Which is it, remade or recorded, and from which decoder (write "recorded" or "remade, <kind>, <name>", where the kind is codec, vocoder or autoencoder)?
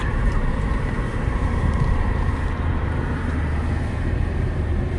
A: remade, vocoder, BigVGAN v2